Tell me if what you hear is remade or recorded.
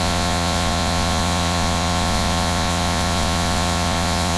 remade